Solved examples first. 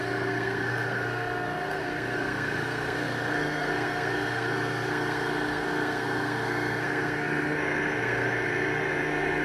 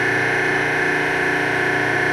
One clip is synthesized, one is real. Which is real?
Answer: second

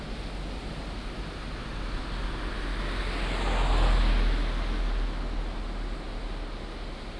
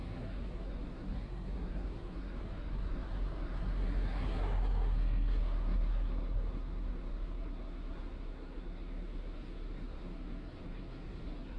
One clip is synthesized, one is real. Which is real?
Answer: first